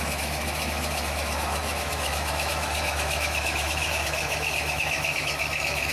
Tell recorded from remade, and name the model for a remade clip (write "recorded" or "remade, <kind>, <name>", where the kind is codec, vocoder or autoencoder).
remade, autoencoder, DAC-VAE